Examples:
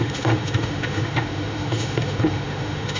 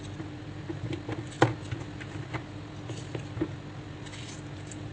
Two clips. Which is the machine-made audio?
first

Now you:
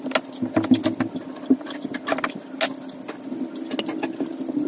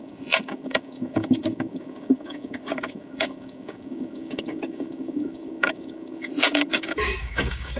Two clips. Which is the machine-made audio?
second